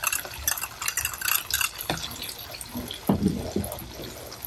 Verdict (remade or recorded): recorded